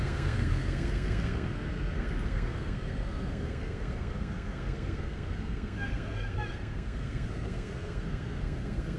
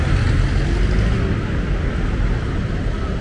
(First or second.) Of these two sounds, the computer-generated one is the first